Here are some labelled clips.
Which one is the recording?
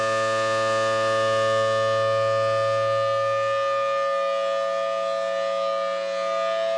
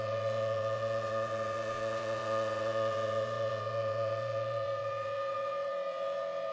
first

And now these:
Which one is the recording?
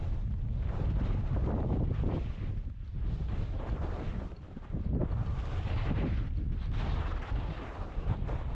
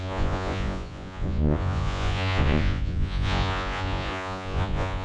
first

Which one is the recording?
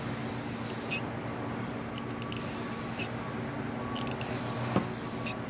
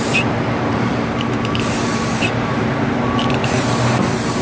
first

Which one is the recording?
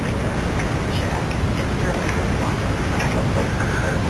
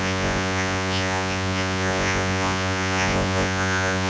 first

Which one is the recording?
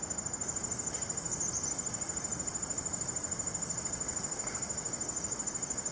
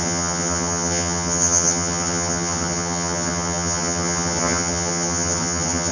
first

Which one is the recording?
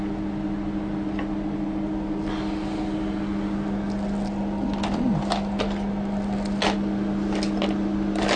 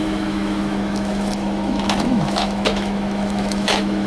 first